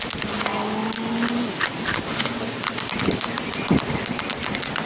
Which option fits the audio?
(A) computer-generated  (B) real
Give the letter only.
B